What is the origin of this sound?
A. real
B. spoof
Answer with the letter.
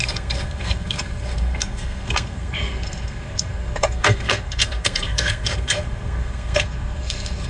B